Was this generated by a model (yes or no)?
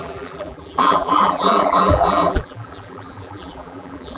yes